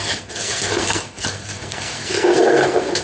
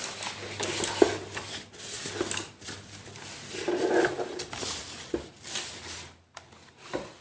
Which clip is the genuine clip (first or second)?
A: second